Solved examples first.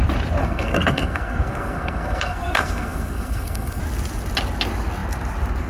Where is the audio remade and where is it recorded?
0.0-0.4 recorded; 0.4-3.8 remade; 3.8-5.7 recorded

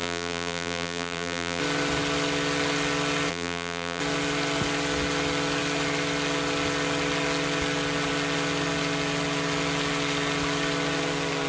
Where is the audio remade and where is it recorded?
0.0-1.6 remade; 1.6-3.3 recorded; 3.3-4.0 remade; 4.0-11.5 recorded